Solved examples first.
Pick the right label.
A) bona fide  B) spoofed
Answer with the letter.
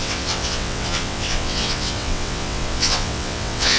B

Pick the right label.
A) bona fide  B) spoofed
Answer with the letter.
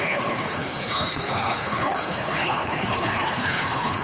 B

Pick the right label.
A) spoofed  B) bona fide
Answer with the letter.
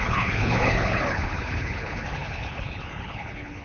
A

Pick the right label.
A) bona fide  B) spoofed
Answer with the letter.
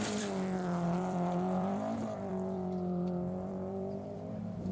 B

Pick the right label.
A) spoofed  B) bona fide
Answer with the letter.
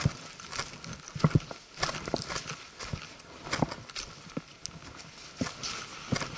B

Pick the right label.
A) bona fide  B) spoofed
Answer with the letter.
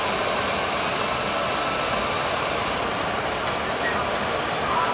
A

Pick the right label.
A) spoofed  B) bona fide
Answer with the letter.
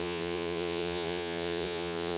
A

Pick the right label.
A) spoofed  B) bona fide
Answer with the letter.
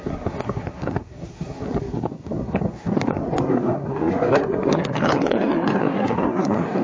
A